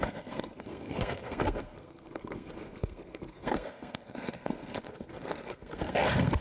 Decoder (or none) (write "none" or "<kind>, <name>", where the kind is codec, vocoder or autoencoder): codec, SNAC